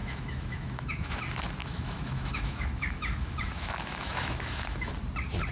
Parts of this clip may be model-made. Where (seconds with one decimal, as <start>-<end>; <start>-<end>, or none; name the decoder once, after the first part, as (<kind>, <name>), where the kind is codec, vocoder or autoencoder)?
0.0-1.2 (autoencoder, DAC-VAE); 1.6-4.9